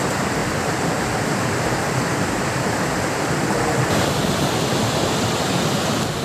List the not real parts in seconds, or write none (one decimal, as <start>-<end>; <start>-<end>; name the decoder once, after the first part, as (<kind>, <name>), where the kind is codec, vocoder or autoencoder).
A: 0.4-3.9 (vocoder, BigVGAN v2)